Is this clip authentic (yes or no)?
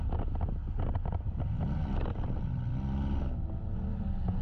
yes